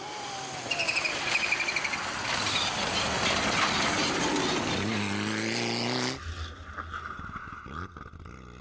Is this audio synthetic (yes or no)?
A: no